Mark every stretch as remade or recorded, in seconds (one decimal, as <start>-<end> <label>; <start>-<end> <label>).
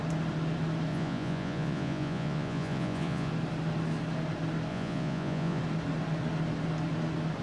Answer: 0.0-0.9 recorded; 0.9-3.3 remade; 3.3-4.7 recorded; 4.7-5.6 remade; 5.6-7.4 recorded